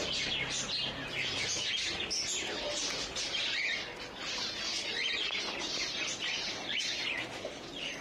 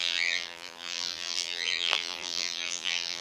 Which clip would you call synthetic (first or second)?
second